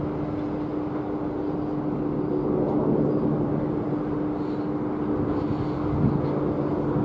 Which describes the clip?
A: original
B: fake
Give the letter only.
A